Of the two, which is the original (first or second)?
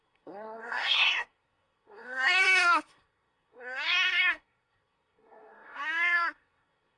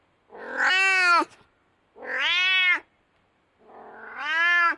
second